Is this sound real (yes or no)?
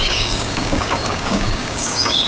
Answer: no